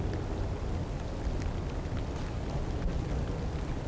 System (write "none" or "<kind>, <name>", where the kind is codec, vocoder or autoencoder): none